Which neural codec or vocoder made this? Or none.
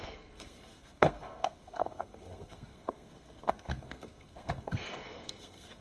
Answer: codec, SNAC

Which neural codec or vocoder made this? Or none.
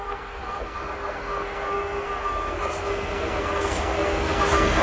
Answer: codec, SNAC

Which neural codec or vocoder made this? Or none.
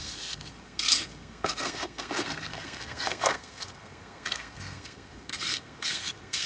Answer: codec, SNAC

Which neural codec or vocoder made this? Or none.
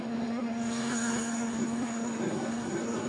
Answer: codec, SNAC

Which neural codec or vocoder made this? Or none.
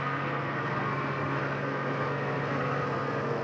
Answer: codec, SNAC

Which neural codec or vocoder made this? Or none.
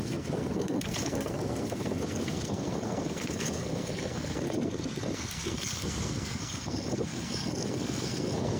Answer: codec, SNAC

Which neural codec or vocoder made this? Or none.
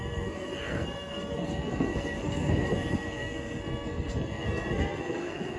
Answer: codec, SNAC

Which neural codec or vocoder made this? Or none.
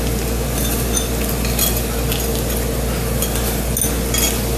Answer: none